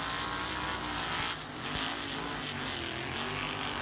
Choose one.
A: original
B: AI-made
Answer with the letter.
A